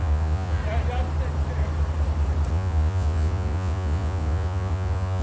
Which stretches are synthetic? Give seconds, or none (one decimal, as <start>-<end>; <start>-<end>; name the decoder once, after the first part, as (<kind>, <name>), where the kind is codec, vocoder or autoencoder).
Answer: 0.0-0.6 (vocoder, Vocos); 2.5-5.2